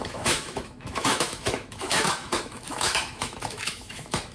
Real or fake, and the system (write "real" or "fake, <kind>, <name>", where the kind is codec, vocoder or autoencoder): fake, autoencoder, DAC-VAE